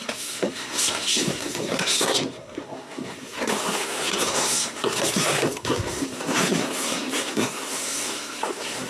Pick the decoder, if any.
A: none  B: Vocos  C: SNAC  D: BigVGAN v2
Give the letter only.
C